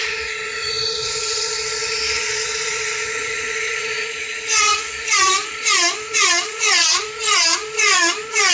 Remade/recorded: remade